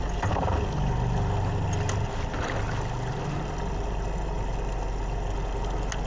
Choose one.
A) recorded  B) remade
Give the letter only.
A